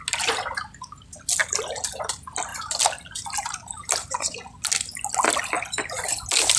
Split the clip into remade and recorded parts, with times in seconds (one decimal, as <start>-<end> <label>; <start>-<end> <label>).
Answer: 0.0-6.6 recorded